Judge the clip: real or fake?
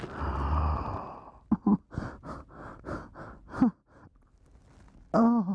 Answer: real